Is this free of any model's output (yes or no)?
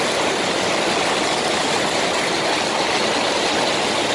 yes